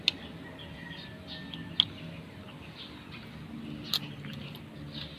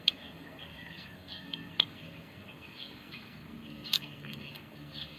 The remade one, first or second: second